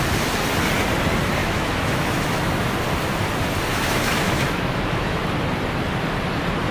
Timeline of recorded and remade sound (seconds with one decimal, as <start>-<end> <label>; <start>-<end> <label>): 0.0-1.4 recorded; 1.4-2.5 remade; 2.5-3.7 recorded; 3.7-5.2 remade; 5.2-6.7 recorded